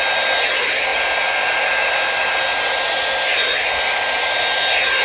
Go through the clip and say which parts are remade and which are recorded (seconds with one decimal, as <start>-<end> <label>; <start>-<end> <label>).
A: 0.0-5.0 recorded